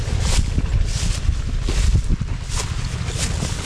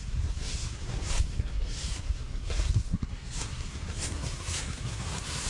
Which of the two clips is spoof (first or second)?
second